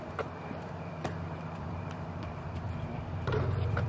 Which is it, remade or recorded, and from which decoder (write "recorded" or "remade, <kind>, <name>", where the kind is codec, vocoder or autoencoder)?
remade, vocoder, BigVGAN v2